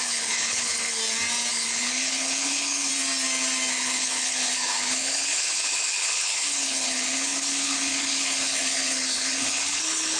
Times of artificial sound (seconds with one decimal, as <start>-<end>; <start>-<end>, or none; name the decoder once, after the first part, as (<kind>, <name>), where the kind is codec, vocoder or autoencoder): 0.0-1.0 (codec, HILCodec); 1.5-2.9; 3.7-10.2